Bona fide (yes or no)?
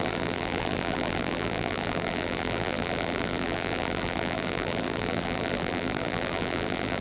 no